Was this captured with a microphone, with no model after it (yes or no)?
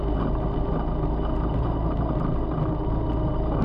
yes